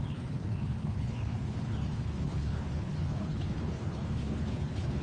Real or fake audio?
fake